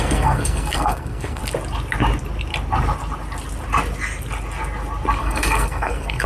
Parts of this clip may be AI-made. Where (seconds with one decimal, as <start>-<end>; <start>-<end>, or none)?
0.0-1.4; 5.2-6.3